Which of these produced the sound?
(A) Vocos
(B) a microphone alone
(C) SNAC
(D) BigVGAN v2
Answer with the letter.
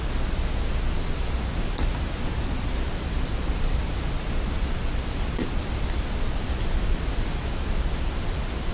B